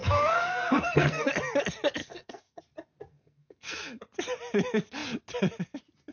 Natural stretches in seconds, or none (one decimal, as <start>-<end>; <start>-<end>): 1.3-2.0; 2.6-3.1; 4.0-6.1